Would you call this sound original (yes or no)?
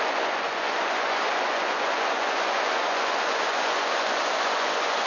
no